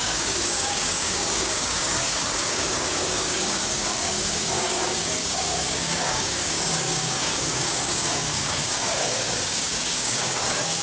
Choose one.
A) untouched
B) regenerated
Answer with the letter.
B